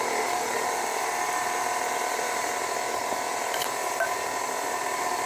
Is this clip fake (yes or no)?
yes